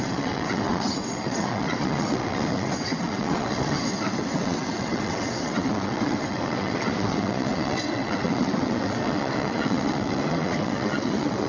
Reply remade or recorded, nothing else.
remade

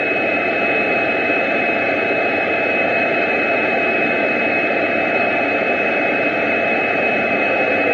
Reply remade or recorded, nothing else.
remade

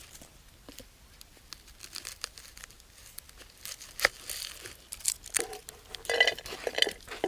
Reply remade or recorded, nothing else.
recorded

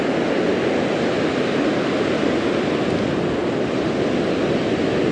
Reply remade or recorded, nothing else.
recorded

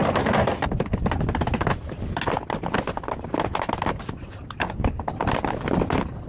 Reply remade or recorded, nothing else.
recorded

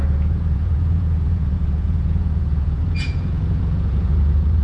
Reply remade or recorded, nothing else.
remade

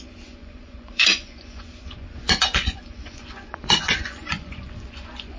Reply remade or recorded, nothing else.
remade